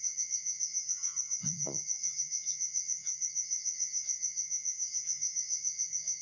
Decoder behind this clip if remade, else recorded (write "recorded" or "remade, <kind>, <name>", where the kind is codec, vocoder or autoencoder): remade, vocoder, Vocos